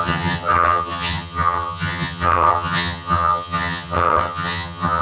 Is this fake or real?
fake